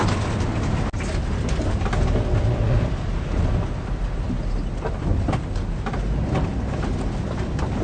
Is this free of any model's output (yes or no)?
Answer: yes